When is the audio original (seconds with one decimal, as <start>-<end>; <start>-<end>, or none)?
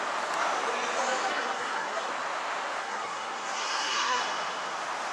0.0-1.3; 2.1-2.8; 4.2-5.1